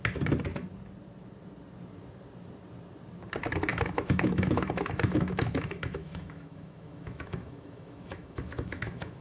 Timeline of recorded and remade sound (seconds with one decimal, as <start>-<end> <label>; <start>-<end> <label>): 0.0-3.7 recorded; 3.7-9.2 remade